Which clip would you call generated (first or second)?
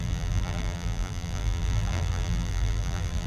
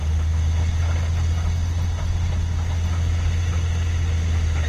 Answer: first